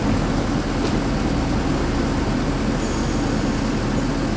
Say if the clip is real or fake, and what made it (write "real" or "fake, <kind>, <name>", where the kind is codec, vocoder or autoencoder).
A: real